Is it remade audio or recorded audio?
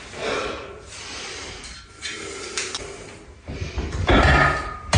recorded